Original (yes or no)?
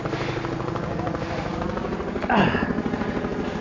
yes